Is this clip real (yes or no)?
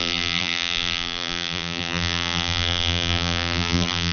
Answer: no